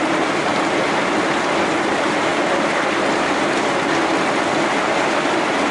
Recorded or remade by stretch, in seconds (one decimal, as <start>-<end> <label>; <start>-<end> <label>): 0.0-5.7 recorded